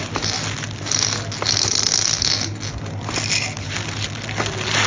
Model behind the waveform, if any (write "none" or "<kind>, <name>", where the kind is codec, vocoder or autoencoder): none